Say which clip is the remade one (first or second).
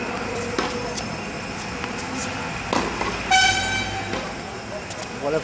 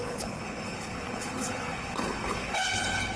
second